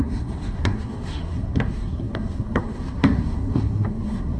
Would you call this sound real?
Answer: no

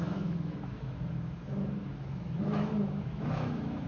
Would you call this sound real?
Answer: no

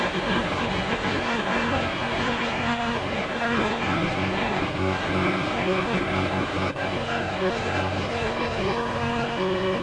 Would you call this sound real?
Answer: no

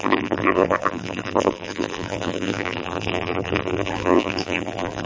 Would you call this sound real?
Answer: no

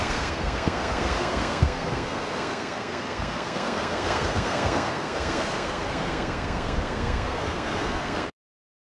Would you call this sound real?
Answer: no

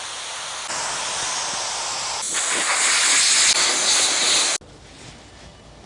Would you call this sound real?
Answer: yes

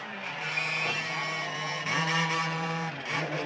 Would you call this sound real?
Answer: no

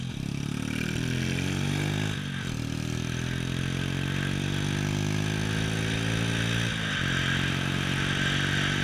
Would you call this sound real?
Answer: yes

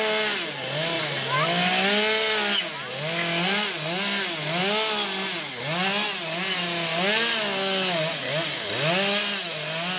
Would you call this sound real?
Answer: yes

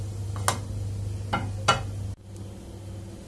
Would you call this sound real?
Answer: yes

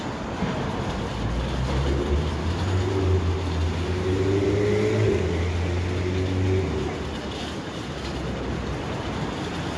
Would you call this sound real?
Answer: yes